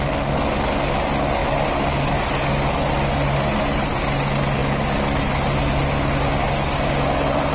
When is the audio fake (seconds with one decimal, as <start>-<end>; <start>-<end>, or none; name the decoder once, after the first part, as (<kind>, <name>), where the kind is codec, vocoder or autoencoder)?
none